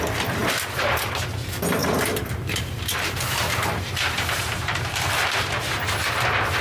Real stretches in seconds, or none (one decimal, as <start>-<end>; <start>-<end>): 0.0-1.8; 5.5-6.6